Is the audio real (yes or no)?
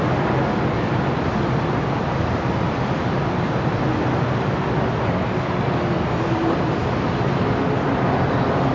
no